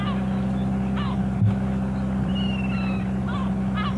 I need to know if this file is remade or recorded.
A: recorded